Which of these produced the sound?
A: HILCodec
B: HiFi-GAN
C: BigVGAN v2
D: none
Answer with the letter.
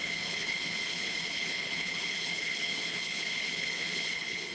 A